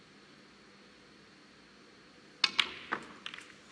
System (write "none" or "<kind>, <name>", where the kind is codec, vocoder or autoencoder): none